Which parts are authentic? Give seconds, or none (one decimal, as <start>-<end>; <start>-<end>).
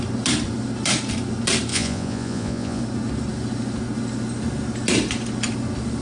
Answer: 0.0-1.7; 2.8-6.0